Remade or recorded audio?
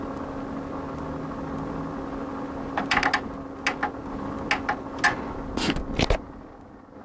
recorded